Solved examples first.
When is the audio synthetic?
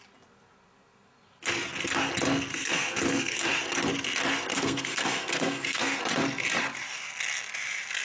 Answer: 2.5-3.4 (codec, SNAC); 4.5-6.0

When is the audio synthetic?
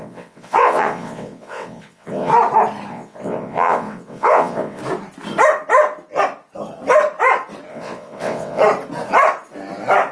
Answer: 0.0-2.3 (vocoder, WaveNeXt); 2.9-4.8; 7.7-8.6